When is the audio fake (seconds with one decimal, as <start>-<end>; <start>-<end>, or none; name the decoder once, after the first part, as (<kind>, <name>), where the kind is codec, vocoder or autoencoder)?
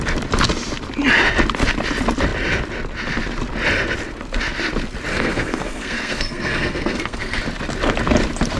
5.1-7.4 (codec, SNAC)